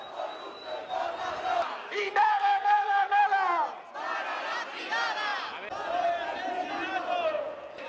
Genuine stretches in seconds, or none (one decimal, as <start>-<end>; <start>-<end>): 0.0-2.3; 3.2-7.9